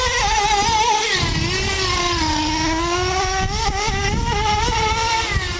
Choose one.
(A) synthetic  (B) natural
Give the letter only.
B